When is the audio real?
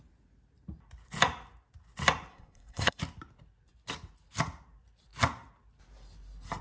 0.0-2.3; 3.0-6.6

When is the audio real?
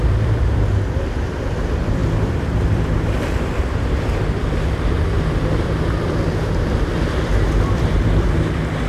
none